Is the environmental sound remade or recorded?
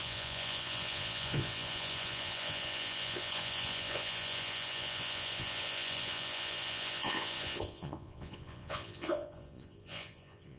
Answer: remade